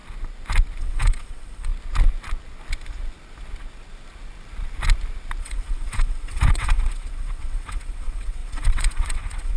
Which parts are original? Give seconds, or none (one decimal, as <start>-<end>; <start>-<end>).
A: 0.0-0.8; 1.7-5.4